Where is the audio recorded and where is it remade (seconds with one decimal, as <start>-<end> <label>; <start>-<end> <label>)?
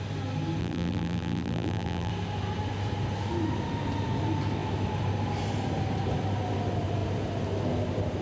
0.0-0.6 recorded; 0.6-2.1 remade; 2.1-8.2 recorded